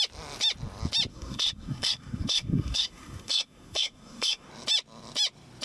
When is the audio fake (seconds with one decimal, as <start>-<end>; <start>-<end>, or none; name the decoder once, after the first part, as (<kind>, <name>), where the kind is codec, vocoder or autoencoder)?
1.1-4.5 (codec, SNAC)